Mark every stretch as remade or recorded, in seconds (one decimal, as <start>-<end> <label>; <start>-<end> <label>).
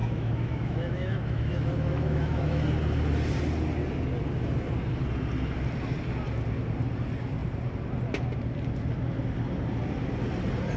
0.0-2.6 remade; 2.6-10.8 recorded